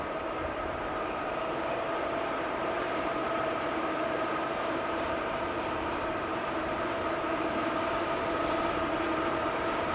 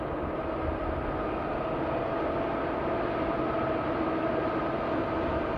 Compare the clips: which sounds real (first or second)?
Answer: second